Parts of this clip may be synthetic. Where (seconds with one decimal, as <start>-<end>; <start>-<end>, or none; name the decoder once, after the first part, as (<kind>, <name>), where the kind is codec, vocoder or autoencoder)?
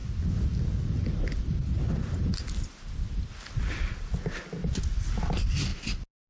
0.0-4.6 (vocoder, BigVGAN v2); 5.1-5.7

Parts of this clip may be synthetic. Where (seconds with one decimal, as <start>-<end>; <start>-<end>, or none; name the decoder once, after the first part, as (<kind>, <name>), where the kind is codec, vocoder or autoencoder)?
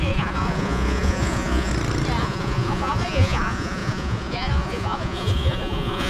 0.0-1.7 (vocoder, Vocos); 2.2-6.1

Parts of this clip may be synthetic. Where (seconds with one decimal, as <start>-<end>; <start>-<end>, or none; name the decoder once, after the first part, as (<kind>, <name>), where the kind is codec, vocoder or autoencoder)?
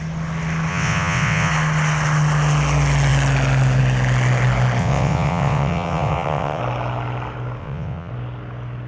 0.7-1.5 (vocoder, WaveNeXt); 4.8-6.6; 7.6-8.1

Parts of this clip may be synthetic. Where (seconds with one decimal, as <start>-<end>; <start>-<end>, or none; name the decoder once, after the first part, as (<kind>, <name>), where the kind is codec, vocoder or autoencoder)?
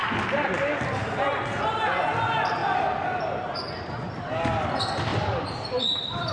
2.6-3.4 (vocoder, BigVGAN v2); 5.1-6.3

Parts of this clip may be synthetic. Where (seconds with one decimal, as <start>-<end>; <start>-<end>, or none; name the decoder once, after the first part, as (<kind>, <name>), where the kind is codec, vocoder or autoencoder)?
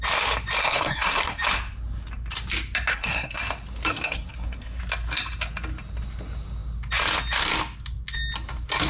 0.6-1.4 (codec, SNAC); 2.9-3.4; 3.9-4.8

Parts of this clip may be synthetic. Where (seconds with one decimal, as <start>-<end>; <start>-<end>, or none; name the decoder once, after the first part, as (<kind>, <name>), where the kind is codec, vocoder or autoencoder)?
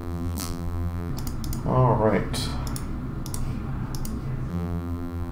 0.0-1.1 (vocoder, BigVGAN v2); 4.5-5.3